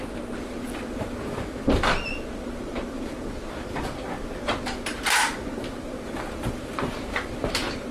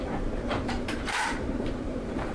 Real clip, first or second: first